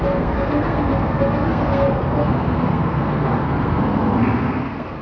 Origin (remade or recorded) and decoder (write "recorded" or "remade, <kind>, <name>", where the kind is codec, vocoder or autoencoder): remade, codec, SNAC